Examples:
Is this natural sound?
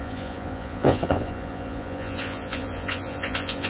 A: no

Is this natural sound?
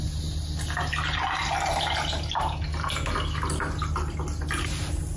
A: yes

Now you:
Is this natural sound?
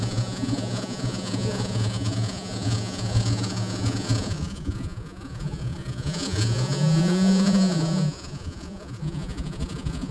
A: no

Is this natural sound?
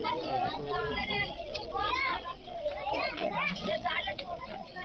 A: no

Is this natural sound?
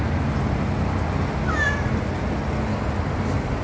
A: yes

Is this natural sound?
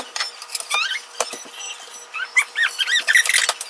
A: yes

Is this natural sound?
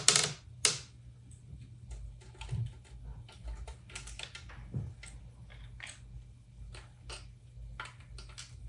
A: yes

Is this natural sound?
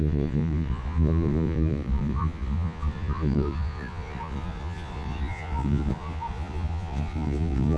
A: no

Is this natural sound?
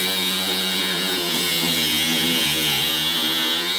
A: no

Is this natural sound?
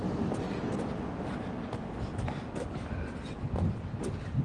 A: yes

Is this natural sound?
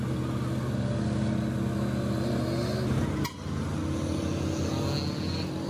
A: yes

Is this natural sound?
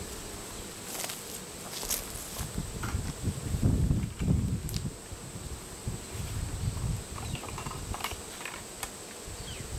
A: yes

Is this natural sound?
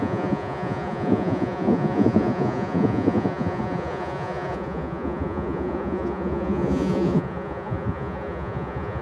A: no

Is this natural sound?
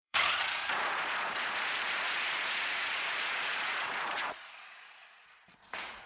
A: no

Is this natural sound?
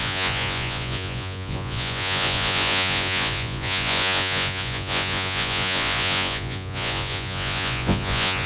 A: no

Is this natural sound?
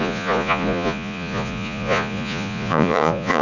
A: no